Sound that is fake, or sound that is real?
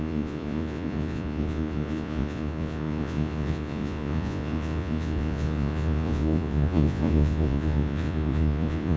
fake